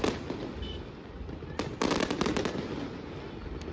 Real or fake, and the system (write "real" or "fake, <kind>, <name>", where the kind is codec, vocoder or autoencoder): real